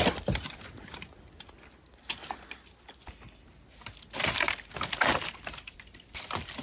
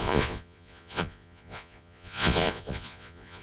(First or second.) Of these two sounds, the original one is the first